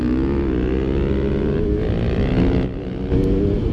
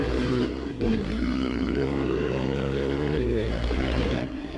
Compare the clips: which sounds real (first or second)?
first